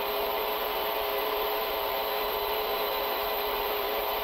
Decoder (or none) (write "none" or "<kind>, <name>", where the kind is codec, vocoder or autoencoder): vocoder, BigVGAN v2